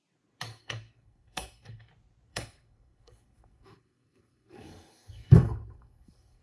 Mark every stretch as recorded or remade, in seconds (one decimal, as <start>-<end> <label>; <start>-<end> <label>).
0.0-0.5 recorded; 0.5-1.9 remade; 1.9-2.3 recorded; 2.3-6.4 remade